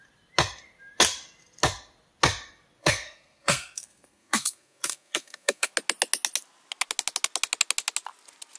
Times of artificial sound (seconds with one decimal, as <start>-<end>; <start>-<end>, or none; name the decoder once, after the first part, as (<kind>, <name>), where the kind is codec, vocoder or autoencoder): 2.8-5.7 (codec, SNAC)